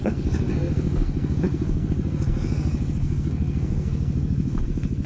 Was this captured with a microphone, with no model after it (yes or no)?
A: no